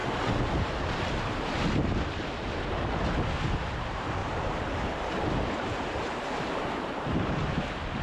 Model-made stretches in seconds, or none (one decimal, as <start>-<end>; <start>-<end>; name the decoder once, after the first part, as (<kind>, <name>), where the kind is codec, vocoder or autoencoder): 3.7-7.4 (vocoder, BigVGAN v2)